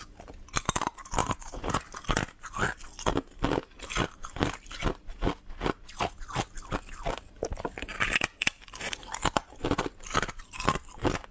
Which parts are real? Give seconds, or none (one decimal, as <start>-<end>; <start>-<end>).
0.0-1.2; 1.8-11.3